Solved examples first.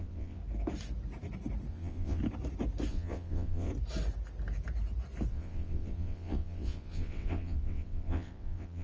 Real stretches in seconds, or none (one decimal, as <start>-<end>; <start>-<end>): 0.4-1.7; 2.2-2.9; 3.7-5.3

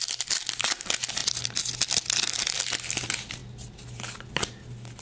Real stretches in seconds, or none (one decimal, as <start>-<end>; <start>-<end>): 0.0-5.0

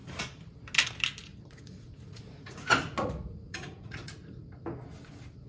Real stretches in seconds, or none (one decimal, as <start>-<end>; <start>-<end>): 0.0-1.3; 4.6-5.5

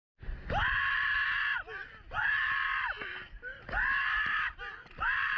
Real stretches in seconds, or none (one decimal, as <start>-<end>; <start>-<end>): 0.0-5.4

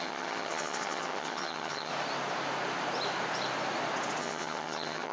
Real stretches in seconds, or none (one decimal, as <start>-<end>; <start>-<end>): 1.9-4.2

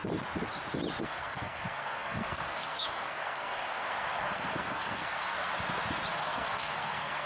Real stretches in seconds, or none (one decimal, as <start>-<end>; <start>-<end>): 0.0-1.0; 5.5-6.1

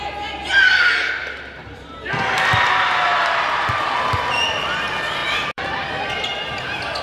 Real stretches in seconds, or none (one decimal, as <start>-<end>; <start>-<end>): 0.0-1.2; 2.4-5.2; 6.0-7.0